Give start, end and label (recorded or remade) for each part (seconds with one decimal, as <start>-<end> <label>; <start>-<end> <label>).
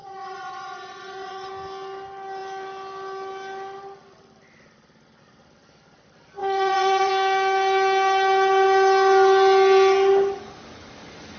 0.0-1.5 remade; 1.5-6.4 recorded; 6.4-7.1 remade; 7.1-11.4 recorded